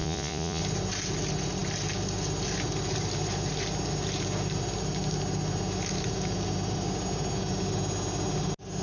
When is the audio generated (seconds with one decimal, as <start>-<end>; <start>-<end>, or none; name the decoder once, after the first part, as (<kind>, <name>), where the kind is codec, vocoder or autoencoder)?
0.0-0.6 (vocoder, Vocos)